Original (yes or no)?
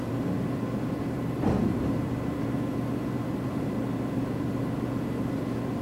no